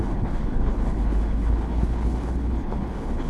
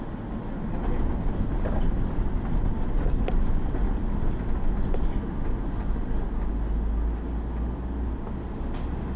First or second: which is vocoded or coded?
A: first